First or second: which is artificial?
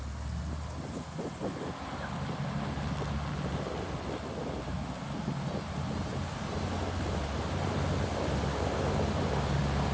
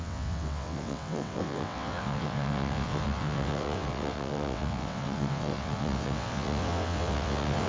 second